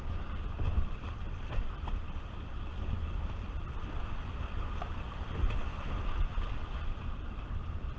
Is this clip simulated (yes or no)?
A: no